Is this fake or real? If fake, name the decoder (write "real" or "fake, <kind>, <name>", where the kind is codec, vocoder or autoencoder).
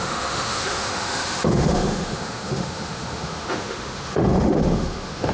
fake, autoencoder, DAC-VAE